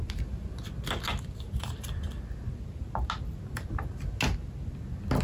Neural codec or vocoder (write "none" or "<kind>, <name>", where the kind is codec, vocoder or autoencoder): none